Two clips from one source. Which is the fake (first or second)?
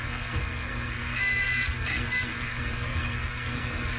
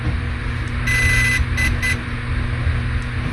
first